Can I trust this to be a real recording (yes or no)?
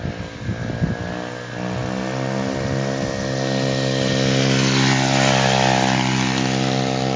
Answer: yes